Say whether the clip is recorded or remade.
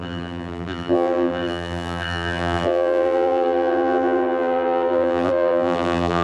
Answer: remade